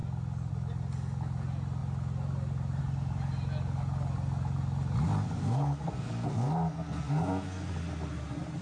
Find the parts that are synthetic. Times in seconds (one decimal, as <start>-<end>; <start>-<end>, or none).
5.4-7.6